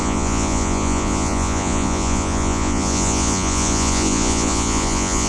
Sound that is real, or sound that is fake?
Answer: fake